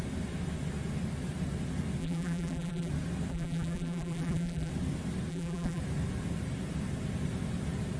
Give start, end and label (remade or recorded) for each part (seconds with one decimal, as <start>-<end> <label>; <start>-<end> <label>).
0.0-2.0 recorded; 2.0-2.9 remade; 2.9-3.3 recorded; 3.3-4.7 remade; 4.7-5.3 recorded; 5.3-5.8 remade; 5.8-8.0 recorded